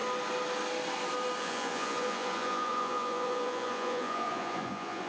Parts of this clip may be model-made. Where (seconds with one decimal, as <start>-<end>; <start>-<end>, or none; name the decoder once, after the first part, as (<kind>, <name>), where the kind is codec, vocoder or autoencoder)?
1.4-5.1 (vocoder, Vocos)